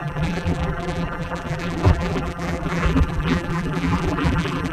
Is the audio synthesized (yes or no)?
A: yes